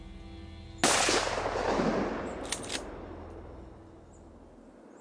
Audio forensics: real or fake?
real